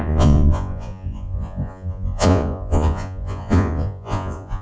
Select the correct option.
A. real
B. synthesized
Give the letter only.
B